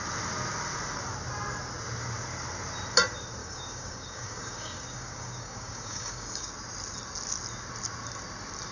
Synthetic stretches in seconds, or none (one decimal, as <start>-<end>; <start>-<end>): 3.4-6.5